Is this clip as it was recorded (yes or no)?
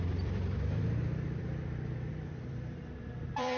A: no